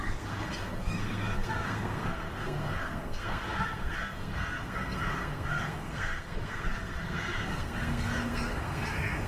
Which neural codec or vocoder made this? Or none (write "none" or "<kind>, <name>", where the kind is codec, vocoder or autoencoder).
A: codec, SNAC